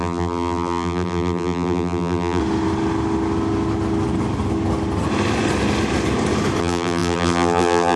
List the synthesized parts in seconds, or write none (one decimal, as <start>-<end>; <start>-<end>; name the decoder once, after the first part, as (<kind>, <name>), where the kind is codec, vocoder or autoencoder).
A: 0.0-2.4 (vocoder, BigVGAN v2); 6.6-8.0